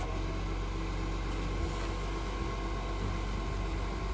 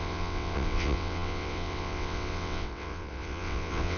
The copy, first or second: second